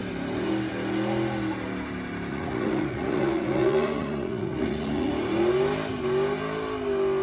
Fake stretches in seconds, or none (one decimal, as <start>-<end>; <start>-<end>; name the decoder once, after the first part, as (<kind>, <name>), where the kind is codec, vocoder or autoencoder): 2.3-5.1 (vocoder, Vocos)